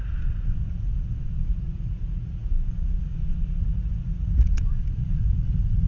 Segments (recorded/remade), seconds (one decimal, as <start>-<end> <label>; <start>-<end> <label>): 0.0-5.9 remade